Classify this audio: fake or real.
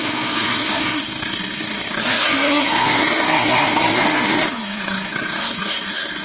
fake